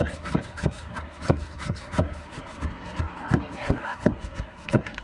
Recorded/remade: remade